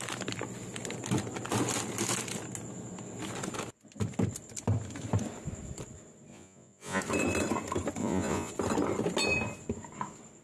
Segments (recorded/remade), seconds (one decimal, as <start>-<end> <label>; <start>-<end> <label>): 0.0-6.3 recorded; 6.3-7.0 remade; 7.0-8.0 recorded; 8.0-8.5 remade; 8.5-10.4 recorded